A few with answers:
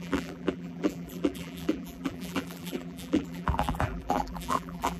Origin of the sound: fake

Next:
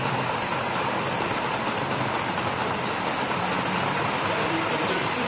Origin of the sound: fake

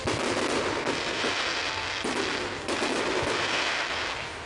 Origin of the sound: real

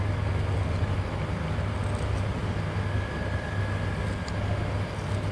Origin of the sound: real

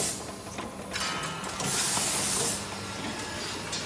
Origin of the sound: real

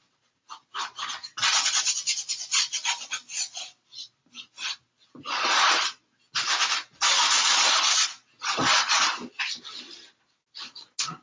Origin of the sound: real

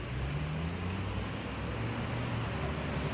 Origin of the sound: real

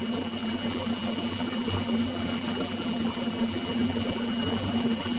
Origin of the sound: fake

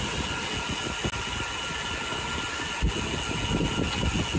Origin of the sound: real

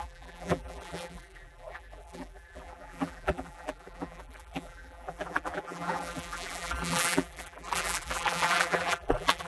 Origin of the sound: fake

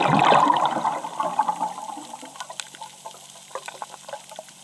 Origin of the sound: real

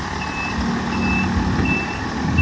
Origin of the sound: real